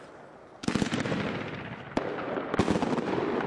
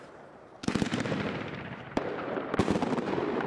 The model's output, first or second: second